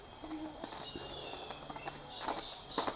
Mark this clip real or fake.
real